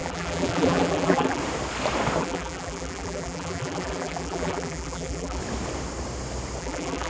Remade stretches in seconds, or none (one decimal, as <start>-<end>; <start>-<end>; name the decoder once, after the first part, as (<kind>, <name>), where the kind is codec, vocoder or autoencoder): 0.0-1.4 (vocoder, BigVGAN v2); 2.2-5.4; 6.6-7.1